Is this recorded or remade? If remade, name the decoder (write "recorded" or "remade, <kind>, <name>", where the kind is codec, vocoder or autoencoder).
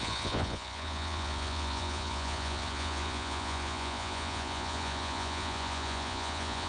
remade, vocoder, Vocos